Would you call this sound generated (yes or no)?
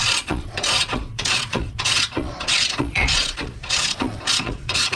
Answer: yes